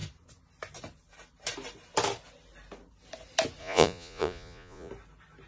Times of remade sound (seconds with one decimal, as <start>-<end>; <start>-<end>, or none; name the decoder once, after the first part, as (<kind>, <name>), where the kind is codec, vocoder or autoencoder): 3.6-4.9 (vocoder, Vocos)